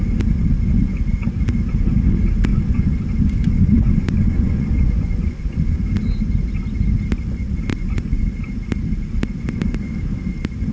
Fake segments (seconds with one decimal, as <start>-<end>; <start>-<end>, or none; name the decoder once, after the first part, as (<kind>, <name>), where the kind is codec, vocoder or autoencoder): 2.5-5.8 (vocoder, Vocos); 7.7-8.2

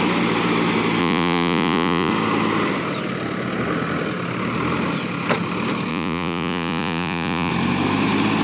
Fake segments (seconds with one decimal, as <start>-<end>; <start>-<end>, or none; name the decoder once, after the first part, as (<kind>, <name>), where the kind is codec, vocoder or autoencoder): 1.0-2.1 (vocoder, Vocos); 5.9-7.5

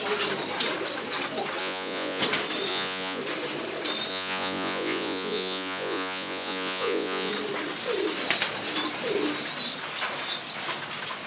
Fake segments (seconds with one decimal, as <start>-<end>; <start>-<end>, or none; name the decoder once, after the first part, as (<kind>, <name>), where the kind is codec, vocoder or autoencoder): 1.6-2.2 (vocoder, Vocos); 2.7-3.2; 4.1-7.3